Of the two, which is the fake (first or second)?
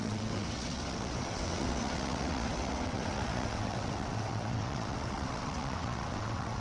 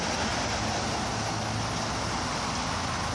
first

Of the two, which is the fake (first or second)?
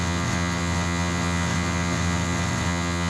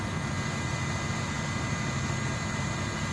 first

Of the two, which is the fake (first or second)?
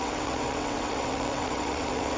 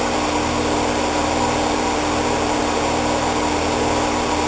first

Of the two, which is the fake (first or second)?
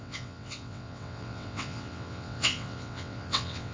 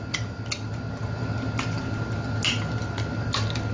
first